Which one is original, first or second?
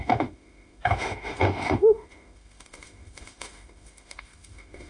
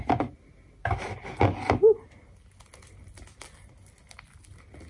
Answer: second